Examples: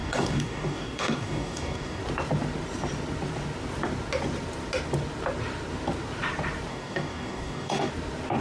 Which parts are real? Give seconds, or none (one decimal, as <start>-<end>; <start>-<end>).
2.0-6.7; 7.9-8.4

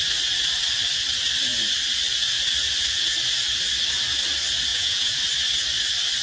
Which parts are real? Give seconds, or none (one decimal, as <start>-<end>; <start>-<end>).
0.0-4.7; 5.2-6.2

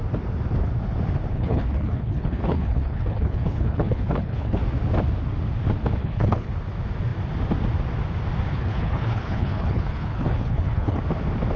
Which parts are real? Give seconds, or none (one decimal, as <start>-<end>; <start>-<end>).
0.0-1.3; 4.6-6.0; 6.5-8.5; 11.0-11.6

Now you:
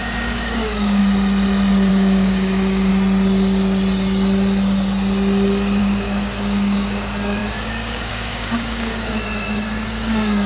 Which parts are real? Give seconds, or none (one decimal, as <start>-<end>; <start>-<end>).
1.0-1.9; 2.9-5.8

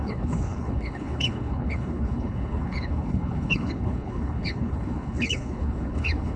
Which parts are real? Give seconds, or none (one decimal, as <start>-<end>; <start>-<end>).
none